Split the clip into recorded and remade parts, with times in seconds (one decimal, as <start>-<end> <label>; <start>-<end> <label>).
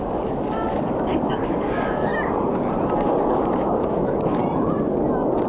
0.0-2.1 remade; 2.1-3.2 recorded; 3.2-4.4 remade; 4.4-5.5 recorded